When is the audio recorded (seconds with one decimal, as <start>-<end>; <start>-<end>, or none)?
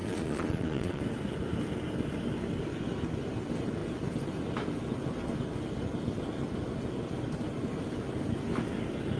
1.0-9.2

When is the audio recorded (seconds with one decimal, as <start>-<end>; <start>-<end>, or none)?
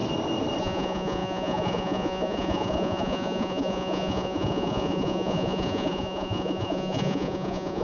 0.0-0.6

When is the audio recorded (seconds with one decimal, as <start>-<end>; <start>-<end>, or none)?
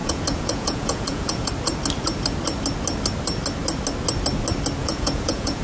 1.5-4.8